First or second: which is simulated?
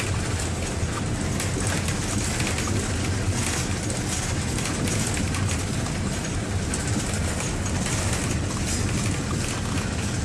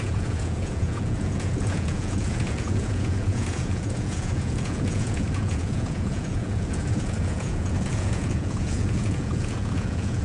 second